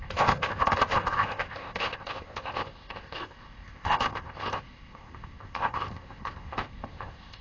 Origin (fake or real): fake